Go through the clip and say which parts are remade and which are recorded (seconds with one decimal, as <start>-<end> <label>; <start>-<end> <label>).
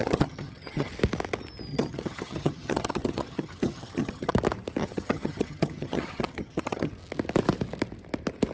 0.0-0.9 remade; 0.9-1.7 recorded; 1.7-4.3 remade; 4.3-4.8 recorded; 4.8-6.9 remade; 6.9-8.5 recorded